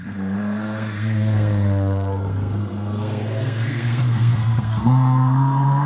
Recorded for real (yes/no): no